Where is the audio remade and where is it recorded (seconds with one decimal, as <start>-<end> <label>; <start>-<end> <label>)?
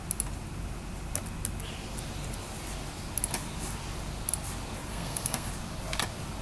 0.0-4.9 recorded; 4.9-5.5 remade; 5.5-6.4 recorded